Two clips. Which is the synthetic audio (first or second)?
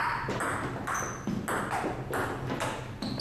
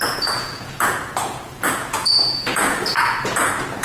second